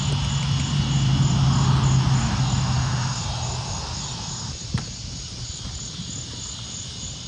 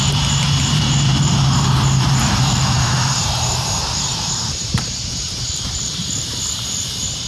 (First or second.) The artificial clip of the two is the second